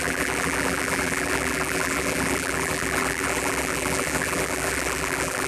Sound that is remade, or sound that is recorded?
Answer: remade